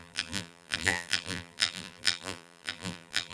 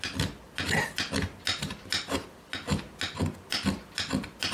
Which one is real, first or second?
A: second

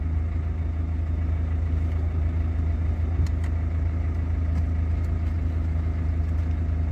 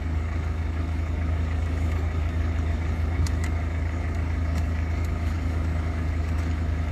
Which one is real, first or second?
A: first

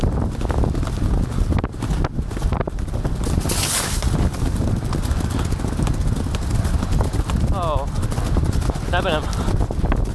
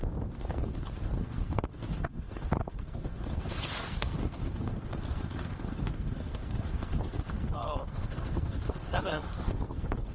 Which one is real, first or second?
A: first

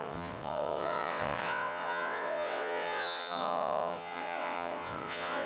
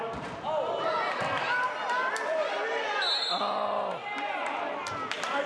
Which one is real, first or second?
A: second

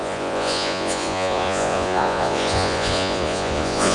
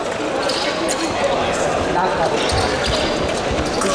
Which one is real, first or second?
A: second